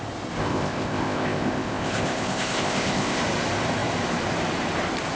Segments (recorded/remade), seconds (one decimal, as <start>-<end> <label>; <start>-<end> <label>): 0.0-0.4 recorded; 0.4-3.2 remade; 3.2-5.2 recorded